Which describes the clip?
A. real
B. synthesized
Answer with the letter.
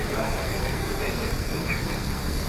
B